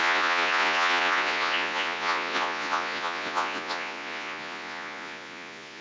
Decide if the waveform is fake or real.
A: fake